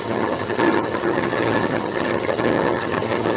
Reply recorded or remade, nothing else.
remade